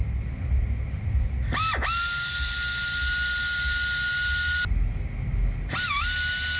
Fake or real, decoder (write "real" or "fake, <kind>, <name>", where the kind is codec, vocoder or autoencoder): real